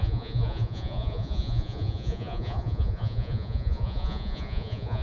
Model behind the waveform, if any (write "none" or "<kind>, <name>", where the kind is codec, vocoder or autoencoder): vocoder, Vocos